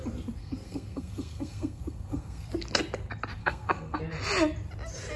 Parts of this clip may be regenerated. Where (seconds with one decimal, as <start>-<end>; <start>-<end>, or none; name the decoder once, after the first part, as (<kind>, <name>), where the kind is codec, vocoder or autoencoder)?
0.4-2.5 (codec, SNAC); 3.4-4.0